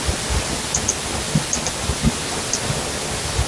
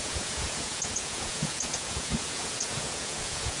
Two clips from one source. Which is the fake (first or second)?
second